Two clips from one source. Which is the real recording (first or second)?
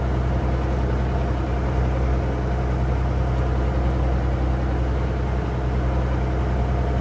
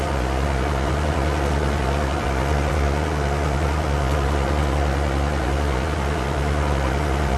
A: first